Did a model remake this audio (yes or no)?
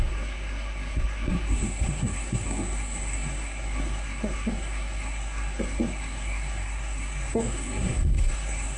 yes